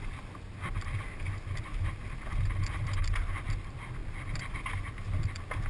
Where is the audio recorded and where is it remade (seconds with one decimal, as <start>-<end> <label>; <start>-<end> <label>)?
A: 0.0-5.7 recorded